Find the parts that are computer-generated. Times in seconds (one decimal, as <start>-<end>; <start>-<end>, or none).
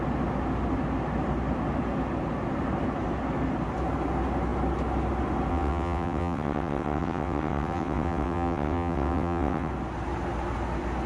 5.5-9.7